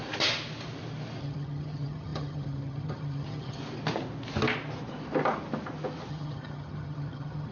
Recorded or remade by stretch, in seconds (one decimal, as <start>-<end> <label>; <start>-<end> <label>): 0.0-1.2 recorded; 1.2-3.6 remade; 3.6-6.1 recorded; 6.1-7.5 remade